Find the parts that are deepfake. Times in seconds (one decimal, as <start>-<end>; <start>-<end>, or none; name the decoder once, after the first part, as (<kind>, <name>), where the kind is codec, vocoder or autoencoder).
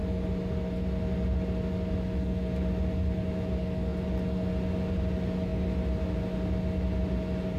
none